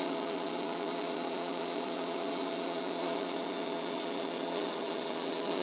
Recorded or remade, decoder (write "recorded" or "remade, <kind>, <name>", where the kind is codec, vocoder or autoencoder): remade, vocoder, Vocos